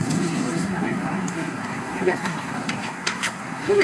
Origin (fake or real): fake